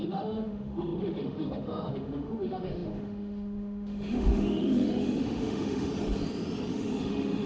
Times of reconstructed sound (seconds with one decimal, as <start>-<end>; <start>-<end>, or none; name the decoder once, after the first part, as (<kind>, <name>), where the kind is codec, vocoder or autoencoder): 0.0-5.9 (autoencoder, DAC-VAE); 6.7-7.5